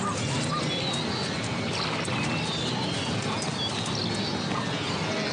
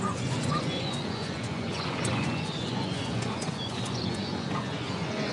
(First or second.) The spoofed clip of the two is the second